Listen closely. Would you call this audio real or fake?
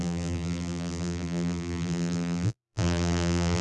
fake